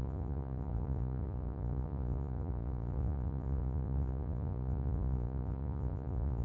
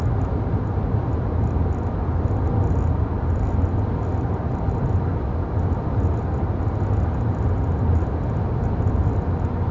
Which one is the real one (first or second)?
second